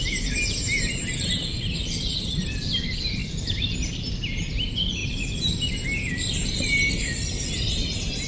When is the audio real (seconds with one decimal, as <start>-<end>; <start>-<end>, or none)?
0.0-8.3